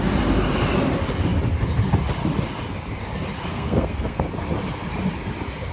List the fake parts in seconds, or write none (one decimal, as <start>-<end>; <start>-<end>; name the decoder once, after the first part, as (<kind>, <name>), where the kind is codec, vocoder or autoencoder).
3.5-4.3 (codec, SNAC)